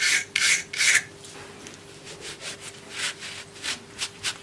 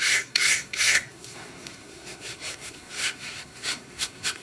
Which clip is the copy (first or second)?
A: second